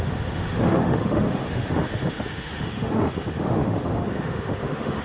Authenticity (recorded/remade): remade